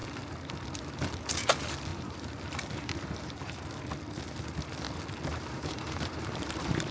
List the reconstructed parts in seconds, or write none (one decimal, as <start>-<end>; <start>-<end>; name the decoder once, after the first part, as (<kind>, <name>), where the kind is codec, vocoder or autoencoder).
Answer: 1.9-3.6 (vocoder, BigVGAN v2); 5.3-6.9